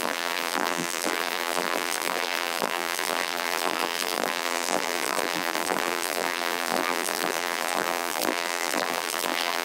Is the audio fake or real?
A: fake